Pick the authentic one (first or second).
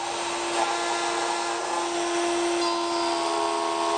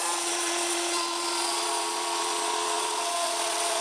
first